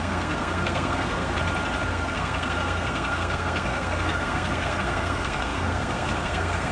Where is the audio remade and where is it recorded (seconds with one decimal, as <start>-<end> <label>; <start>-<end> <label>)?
0.0-1.4 remade; 1.4-1.9 recorded; 1.9-6.7 remade